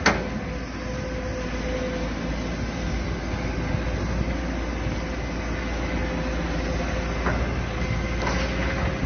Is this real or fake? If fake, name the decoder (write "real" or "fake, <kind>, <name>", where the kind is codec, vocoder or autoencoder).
real